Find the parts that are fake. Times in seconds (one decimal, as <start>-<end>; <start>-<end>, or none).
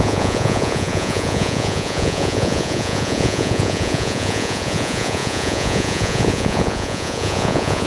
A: 0.0-7.9